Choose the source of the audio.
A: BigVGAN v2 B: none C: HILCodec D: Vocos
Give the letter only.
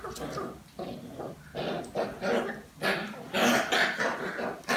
B